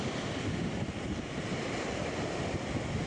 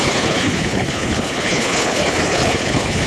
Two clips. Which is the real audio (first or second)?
first